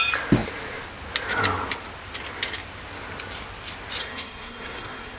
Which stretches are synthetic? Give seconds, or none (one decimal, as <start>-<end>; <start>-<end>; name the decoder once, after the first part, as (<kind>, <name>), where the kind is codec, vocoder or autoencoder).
4.0-5.2 (codec, SNAC)